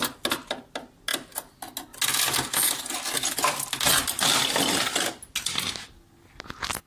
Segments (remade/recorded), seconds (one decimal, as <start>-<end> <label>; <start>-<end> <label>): 0.0-6.9 recorded